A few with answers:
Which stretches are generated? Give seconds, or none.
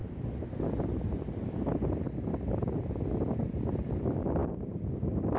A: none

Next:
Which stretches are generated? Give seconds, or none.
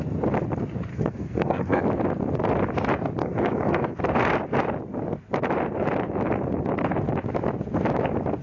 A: 0.9-1.8 (codec, SNAC); 3.2-4.0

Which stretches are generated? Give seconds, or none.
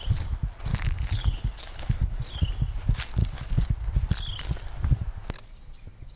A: 0.7-2.2 (codec, HILCodec); 3.2-3.7